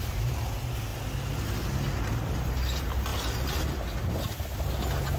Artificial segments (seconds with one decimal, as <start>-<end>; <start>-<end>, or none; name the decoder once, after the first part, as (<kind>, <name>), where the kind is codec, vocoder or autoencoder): none

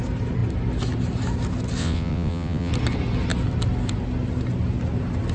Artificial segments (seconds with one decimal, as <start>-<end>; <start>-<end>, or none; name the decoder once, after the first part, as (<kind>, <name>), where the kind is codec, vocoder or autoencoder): 1.8-2.7 (vocoder, WaveNeXt)

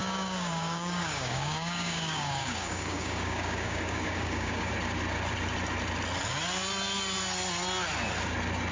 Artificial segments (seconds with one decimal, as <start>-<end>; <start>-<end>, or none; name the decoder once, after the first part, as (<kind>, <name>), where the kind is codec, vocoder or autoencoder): 0.0-4.7 (codec, DAC)

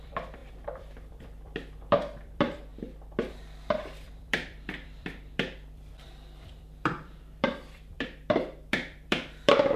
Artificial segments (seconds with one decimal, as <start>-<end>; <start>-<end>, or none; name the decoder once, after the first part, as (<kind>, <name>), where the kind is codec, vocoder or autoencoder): 0.0-2.7 (vocoder, BigVGAN v2); 3.3-9.8